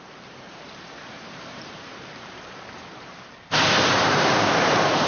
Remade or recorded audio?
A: remade